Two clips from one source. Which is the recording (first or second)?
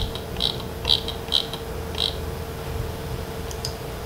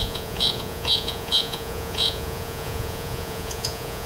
first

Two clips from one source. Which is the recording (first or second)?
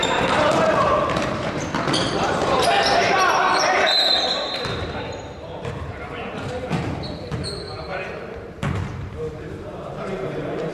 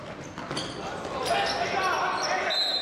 second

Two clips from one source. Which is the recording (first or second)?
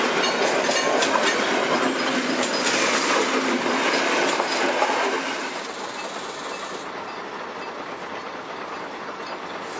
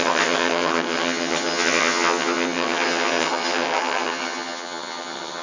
first